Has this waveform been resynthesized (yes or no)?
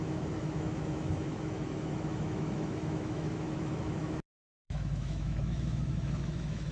yes